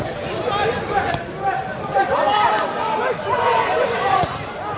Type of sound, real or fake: fake